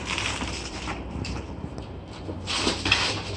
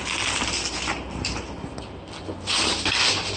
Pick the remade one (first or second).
first